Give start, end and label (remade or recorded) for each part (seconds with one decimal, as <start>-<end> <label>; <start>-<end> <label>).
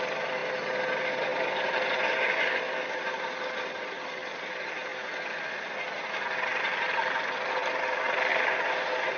0.0-9.2 recorded